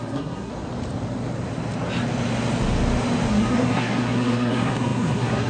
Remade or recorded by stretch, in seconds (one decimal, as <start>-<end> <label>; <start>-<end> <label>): 0.0-0.5 remade; 0.5-3.3 recorded; 3.3-5.5 remade